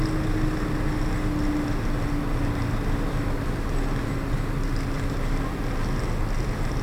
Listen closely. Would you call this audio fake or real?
real